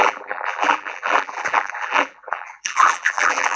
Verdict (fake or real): fake